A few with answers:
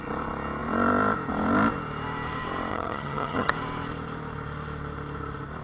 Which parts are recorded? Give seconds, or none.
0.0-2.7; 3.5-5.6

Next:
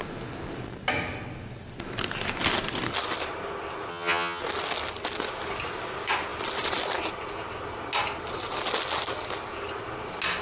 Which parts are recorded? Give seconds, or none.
0.0-3.9; 4.4-10.4

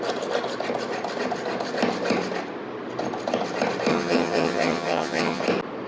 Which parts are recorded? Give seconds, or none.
0.0-3.9; 5.4-5.9

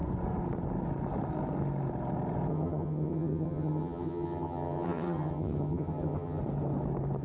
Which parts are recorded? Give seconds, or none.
0.0-2.5; 6.4-7.2

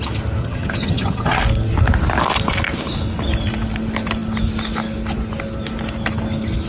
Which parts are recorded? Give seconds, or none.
0.0-0.4; 1.4-6.7

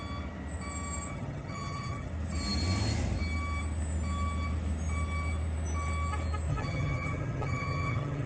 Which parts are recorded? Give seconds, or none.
0.0-1.1; 2.1-6.5

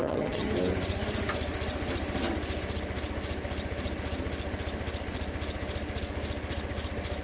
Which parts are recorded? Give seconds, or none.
0.5-7.2